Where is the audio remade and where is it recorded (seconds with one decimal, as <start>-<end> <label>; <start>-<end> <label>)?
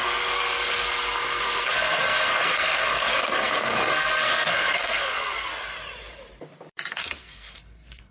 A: 0.0-5.5 remade; 5.5-6.9 recorded; 6.9-8.1 remade